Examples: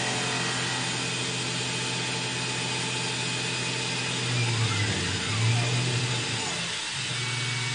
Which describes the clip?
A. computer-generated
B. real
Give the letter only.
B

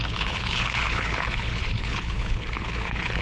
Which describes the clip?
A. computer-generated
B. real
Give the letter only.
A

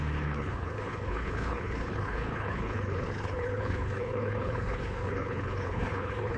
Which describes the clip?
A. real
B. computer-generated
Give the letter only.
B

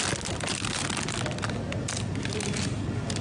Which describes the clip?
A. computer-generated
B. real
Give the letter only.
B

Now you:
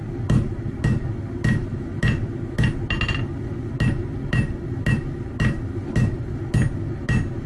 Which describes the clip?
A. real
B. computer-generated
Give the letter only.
A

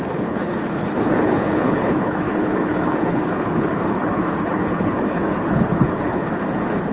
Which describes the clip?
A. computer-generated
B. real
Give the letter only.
A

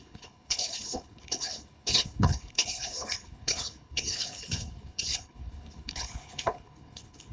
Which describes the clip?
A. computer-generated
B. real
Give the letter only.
A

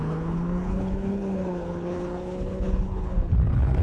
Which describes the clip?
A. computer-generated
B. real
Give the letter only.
A